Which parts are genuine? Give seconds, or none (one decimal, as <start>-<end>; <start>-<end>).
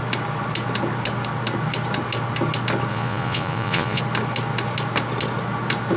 0.0-2.9; 4.0-6.0